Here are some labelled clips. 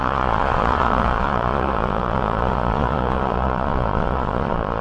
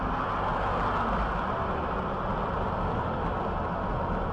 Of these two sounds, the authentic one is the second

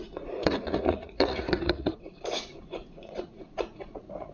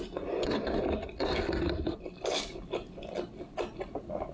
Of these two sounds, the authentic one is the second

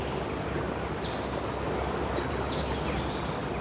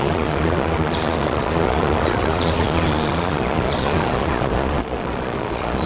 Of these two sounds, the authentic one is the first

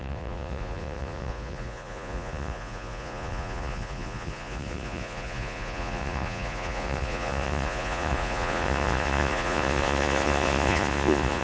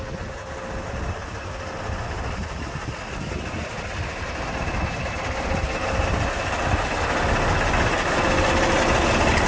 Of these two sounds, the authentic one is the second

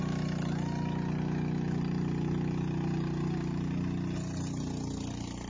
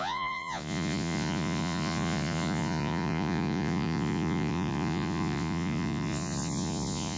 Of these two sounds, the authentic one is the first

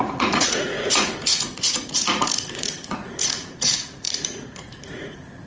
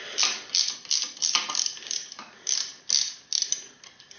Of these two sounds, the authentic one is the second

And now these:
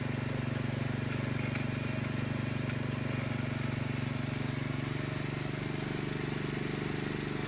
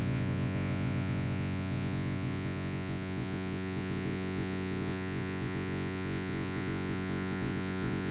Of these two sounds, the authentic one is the first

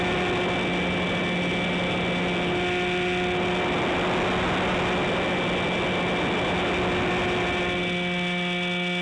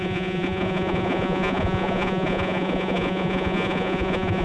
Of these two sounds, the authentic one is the first